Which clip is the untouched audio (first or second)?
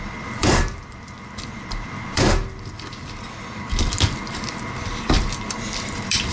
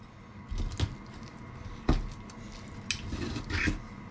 second